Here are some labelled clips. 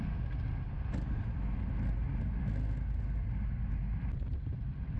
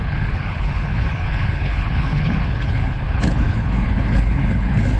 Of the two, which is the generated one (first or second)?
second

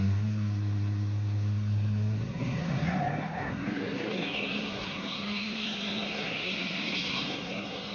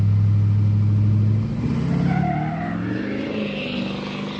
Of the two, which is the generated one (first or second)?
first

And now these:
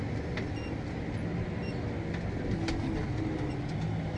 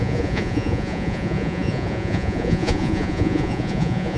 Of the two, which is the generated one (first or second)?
second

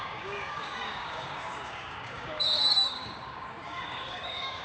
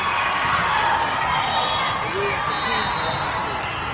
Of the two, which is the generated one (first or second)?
first